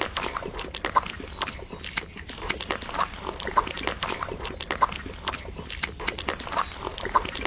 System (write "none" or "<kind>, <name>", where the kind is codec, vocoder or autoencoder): none